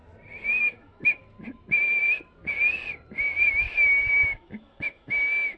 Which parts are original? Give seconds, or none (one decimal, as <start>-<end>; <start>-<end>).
0.0-0.6; 1.2-3.5